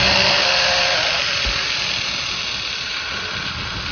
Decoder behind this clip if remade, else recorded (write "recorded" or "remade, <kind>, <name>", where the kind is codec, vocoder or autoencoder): recorded